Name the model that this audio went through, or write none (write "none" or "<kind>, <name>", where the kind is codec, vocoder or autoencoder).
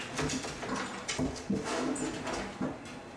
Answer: none